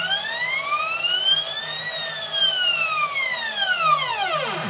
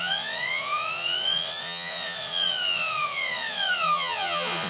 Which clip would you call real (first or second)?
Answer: first